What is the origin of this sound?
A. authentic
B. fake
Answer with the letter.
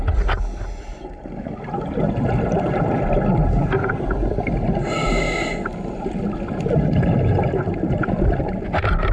A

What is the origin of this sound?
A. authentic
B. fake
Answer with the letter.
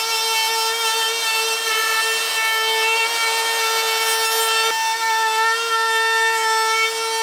A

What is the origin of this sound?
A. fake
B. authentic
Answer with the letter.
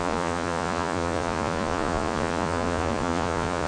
A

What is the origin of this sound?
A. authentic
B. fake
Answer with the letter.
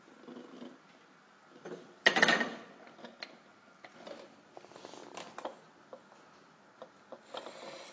A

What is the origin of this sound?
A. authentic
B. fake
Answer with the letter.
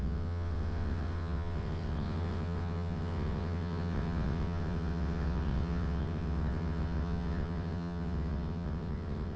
B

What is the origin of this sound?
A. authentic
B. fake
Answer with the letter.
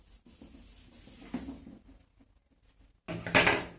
A